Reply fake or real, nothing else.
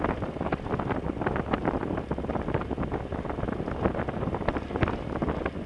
real